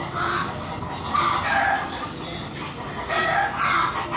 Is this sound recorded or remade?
recorded